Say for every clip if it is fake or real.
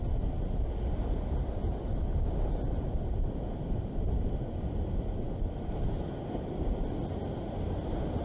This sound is real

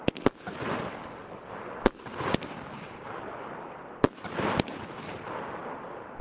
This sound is real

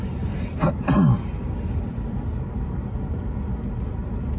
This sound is real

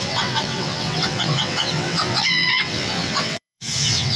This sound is fake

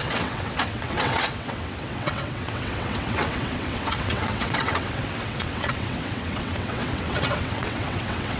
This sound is fake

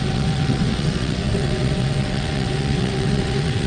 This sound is fake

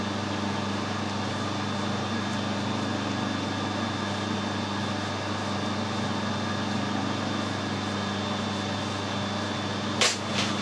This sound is real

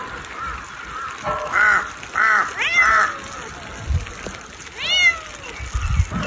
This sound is real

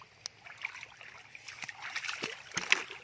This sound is real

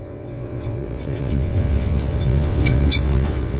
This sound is fake